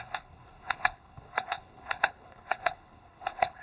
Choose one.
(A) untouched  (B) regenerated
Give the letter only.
B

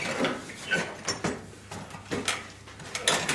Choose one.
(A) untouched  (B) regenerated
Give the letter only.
A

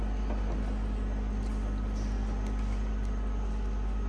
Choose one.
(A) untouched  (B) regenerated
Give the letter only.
A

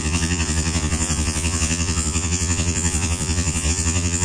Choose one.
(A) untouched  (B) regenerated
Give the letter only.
B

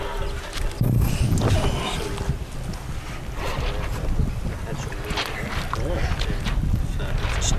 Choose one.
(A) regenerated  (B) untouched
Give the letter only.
B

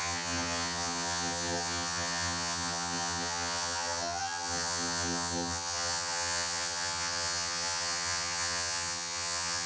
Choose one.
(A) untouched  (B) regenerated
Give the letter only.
B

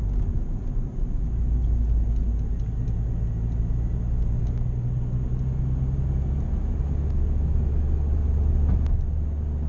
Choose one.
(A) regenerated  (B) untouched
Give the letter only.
B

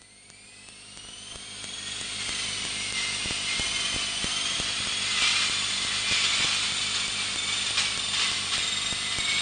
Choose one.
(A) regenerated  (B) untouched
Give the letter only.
B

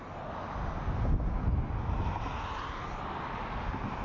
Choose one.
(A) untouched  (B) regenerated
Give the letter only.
A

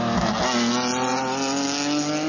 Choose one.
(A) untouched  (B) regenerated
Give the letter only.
A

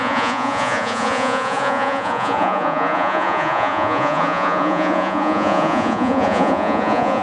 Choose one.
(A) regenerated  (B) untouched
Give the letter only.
A